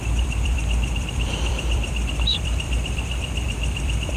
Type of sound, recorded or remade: remade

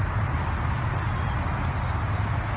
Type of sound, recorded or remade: recorded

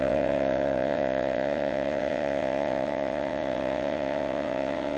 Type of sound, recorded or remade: remade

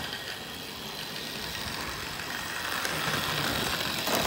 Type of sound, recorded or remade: recorded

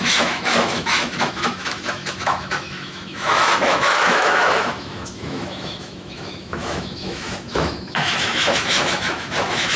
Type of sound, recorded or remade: remade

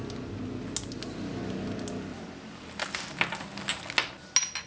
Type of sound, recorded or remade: recorded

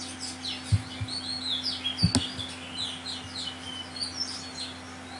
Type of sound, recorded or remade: recorded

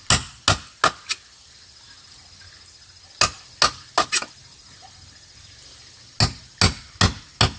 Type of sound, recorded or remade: recorded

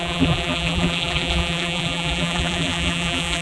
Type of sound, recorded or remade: remade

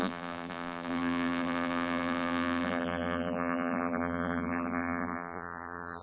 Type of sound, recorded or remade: remade